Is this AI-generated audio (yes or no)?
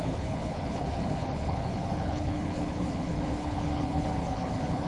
yes